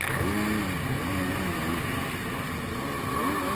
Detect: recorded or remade recorded